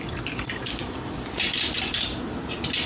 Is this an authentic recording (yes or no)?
yes